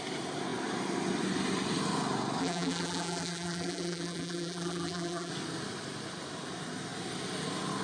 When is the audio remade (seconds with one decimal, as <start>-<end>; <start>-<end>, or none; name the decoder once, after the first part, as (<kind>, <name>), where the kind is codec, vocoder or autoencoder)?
2.4-5.3 (vocoder, BigVGAN v2)